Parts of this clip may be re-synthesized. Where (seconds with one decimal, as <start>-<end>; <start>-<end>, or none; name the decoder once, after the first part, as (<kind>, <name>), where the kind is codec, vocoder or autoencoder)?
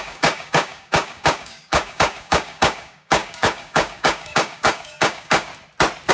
0.0-5.5 (codec, DAC)